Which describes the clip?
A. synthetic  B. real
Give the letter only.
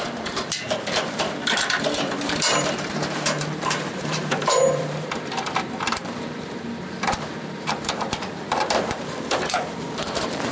A